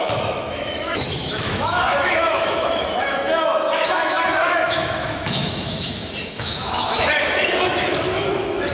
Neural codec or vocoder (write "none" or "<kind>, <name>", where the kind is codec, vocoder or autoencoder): autoencoder, DAC-VAE